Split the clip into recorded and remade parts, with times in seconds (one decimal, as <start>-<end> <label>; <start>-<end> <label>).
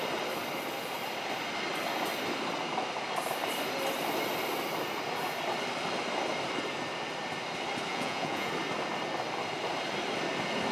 0.0-7.9 recorded; 7.9-8.5 remade; 8.5-10.7 recorded